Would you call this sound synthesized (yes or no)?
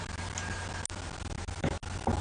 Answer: no